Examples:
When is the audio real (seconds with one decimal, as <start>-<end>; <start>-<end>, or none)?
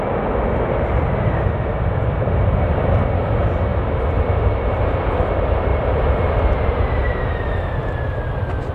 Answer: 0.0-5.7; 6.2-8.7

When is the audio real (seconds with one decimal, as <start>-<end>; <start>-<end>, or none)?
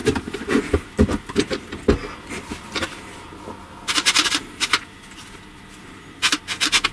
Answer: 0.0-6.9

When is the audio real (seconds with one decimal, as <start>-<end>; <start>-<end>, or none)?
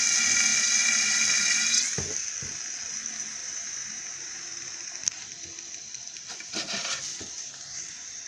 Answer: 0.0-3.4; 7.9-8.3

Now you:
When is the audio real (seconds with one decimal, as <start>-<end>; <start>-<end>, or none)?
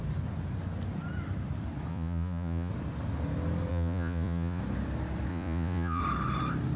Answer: 0.0-1.9; 2.7-3.7; 4.6-5.3; 6.0-6.8